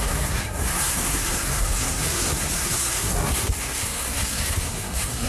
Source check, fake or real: fake